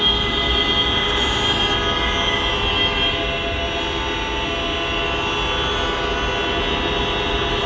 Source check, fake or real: real